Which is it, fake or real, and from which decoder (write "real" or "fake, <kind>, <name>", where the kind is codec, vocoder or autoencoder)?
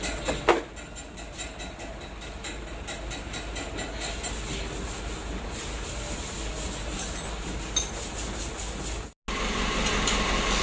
real